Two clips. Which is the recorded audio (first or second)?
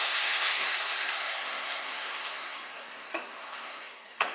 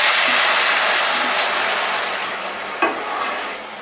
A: second